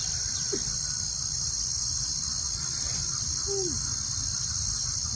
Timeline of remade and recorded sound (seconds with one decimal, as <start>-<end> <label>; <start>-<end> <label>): 0.0-5.2 recorded